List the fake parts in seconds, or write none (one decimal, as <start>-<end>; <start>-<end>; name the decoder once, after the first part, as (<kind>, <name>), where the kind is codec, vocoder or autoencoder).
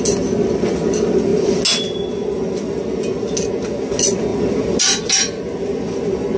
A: 4.3-5.4 (vocoder, BigVGAN v2)